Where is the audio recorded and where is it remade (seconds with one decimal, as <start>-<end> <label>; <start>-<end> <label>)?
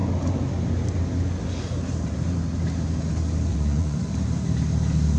0.0-3.5 recorded; 3.5-4.1 remade; 4.1-5.2 recorded